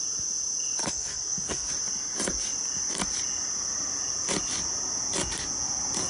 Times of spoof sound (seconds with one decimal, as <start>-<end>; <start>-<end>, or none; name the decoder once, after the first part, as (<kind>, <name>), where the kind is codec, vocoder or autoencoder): 0.8-1.7 (codec, SNAC)